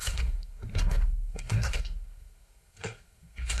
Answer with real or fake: fake